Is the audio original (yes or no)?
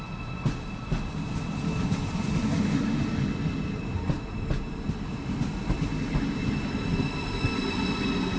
yes